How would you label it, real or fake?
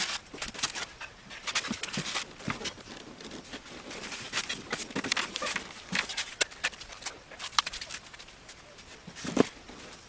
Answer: fake